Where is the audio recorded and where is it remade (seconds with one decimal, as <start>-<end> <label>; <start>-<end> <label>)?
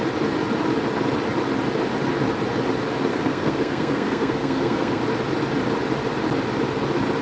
0.0-3.1 recorded; 3.1-5.0 remade; 5.0-7.2 recorded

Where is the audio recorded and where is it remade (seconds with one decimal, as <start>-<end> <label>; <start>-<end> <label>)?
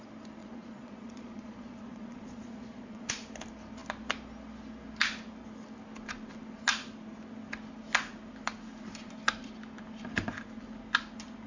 0.0-0.4 recorded; 0.4-3.1 remade; 3.1-11.5 recorded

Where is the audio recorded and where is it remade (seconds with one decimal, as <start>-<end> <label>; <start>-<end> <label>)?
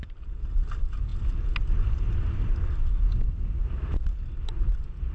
0.0-5.1 recorded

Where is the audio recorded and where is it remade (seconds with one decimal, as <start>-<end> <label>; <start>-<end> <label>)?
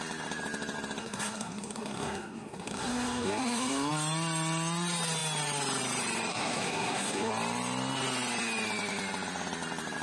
0.0-1.0 recorded; 1.0-3.9 remade; 3.9-6.3 recorded; 6.3-7.3 remade; 7.3-10.0 recorded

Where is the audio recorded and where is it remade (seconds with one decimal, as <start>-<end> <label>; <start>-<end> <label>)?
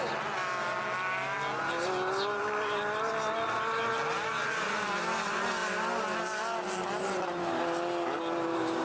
0.0-8.8 recorded